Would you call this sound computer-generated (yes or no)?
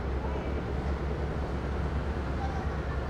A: no